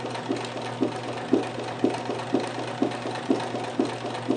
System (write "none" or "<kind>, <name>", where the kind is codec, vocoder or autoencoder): none